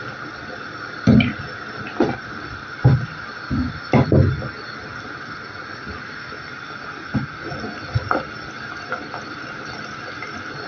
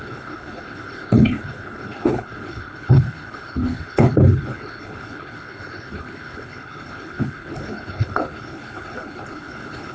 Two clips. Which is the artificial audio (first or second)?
second